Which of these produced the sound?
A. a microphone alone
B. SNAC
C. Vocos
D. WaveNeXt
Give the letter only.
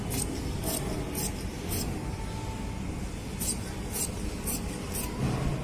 A